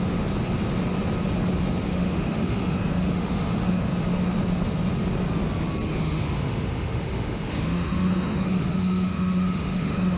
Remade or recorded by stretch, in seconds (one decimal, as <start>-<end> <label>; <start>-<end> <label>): 0.0-1.9 recorded; 1.9-3.9 remade; 3.9-5.9 recorded; 5.9-10.2 remade